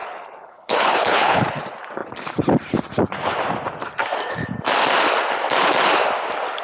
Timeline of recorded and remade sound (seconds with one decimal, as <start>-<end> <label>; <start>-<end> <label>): 0.0-1.6 remade; 1.6-6.6 recorded